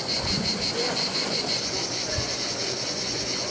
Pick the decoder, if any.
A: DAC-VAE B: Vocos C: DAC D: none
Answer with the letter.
B